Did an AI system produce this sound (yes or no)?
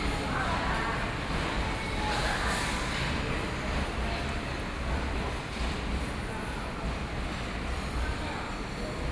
no